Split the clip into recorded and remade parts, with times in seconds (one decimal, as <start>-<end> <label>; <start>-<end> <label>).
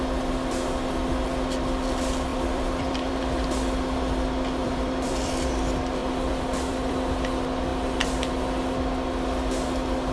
0.0-2.3 recorded; 2.3-3.2 remade; 3.2-4.6 recorded; 4.6-5.5 remade; 5.5-6.0 recorded; 6.0-7.1 remade; 7.1-10.1 recorded